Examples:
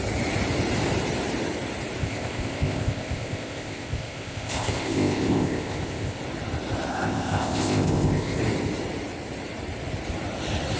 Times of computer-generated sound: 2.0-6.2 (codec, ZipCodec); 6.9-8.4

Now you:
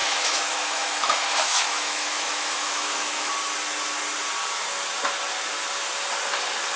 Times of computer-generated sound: 0.0-3.3 (autoencoder, DAC-VAE)

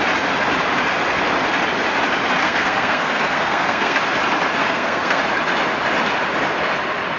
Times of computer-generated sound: 2.4-4.0 (codec, SNAC); 4.6-5.2

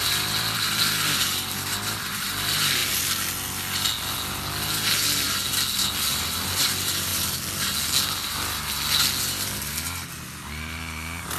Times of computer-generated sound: 0.0-2.8 (vocoder, BigVGAN v2); 5.7-7.1

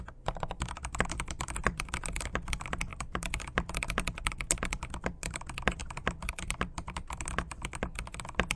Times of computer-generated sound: 2.9-4.3 (vocoder, BigVGAN v2); 5.8-6.3

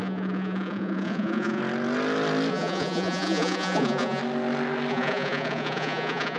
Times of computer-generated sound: 0.0-1.6 (vocoder, Vocos); 2.5-4.2; 4.9-6.4